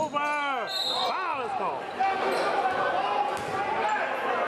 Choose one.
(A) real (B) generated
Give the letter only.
A